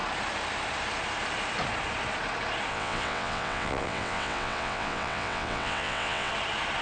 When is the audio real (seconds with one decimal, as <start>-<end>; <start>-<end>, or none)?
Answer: 0.0-2.7; 6.3-6.8